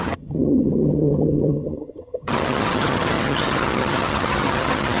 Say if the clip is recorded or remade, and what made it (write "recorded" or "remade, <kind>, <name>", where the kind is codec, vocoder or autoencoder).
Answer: remade, vocoder, HiFi-GAN